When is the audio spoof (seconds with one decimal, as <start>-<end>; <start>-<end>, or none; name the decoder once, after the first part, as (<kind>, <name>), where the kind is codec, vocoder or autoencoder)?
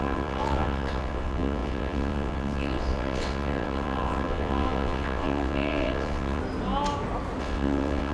0.0-6.4 (vocoder, WaveNeXt); 7.4-8.1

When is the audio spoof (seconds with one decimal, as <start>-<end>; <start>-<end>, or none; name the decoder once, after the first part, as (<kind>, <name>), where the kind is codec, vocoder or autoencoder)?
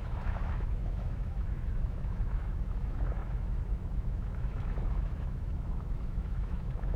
0.0-7.0 (autoencoder, DAC-VAE)